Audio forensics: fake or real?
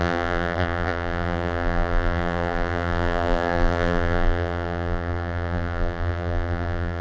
fake